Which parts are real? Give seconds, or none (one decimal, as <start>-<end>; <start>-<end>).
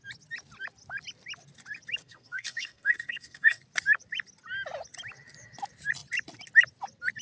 0.0-2.0; 3.6-7.2